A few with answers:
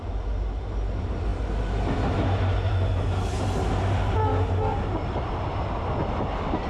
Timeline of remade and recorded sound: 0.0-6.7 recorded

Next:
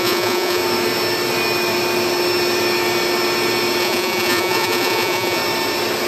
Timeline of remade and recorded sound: 0.0-0.6 remade; 0.6-3.8 recorded; 3.8-5.4 remade; 5.4-6.1 recorded